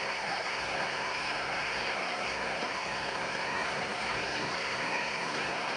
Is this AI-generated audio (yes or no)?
yes